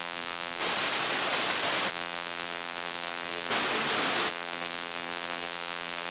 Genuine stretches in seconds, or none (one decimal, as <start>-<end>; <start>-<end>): 0.6-1.9; 3.5-4.3